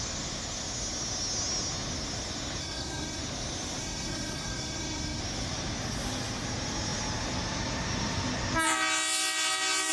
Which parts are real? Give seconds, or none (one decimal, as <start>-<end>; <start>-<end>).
0.0-2.6; 3.2-3.8; 5.2-9.9